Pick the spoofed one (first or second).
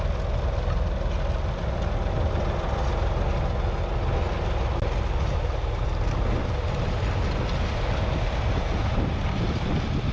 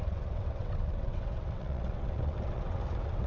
second